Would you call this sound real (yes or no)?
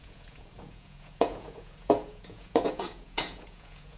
no